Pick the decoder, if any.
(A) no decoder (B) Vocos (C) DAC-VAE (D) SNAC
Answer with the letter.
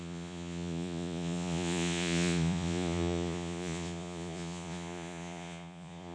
B